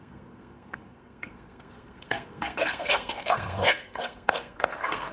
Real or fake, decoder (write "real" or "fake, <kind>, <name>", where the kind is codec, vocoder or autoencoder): fake, codec, SNAC